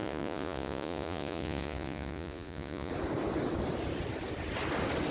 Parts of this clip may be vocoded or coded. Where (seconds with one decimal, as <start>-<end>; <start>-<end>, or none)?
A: 0.0-2.9